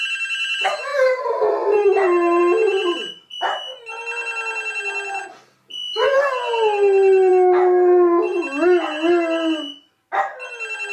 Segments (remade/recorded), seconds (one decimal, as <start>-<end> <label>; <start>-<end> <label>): 0.0-10.9 recorded